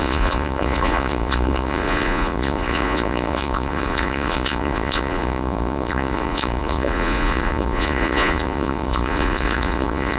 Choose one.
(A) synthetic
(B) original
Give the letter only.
A